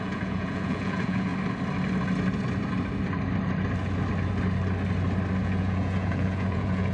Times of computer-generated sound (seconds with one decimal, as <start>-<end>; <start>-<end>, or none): 0.0-1.3; 5.4-6.9